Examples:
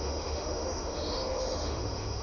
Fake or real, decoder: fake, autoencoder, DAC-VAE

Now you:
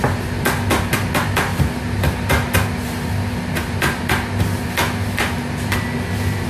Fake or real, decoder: real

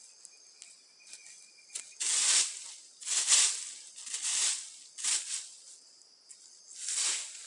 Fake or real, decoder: real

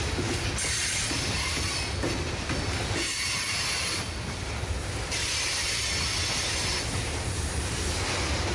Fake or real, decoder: real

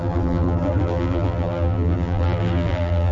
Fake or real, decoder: fake, vocoder, BigVGAN v2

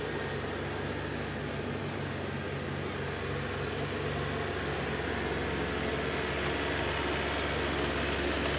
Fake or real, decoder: real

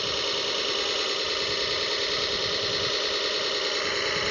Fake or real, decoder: fake, vocoder, BigVGAN v2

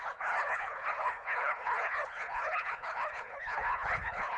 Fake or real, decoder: fake, codec, HILCodec